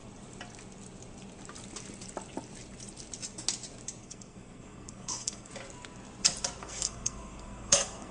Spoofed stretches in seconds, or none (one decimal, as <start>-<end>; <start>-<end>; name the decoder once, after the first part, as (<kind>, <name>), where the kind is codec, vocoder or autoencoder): 4.0-5.5 (codec, SNAC); 6.6-8.1